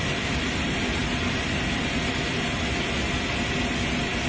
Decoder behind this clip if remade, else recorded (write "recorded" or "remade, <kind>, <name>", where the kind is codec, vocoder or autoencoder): recorded